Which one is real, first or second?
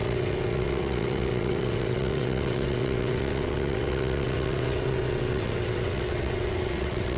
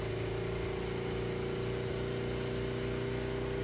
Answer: second